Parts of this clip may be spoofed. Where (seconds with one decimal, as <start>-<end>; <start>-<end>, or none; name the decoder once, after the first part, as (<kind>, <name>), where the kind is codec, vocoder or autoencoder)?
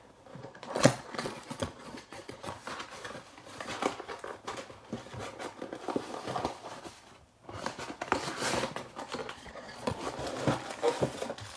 0.4-2.5 (vocoder, Vocos); 9.2-10.0